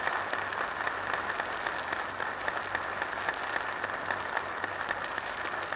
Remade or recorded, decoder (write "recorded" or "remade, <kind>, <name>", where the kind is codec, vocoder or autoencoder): recorded